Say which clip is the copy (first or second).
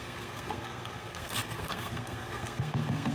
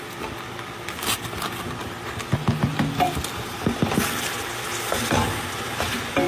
first